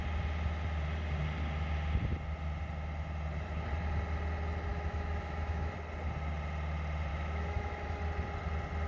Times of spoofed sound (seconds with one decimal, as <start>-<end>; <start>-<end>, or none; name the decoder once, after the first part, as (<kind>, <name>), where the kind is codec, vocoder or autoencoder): 4.7-5.7 (autoencoder, DAC-VAE); 7.1-8.0